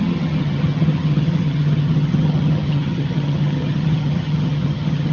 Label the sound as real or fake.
fake